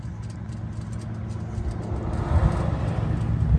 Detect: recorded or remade recorded